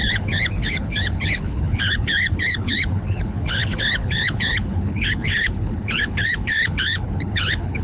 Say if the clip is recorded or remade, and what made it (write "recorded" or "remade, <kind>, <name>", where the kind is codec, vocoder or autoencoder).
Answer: remade, codec, HILCodec